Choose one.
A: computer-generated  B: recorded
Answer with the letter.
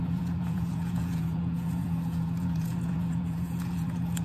A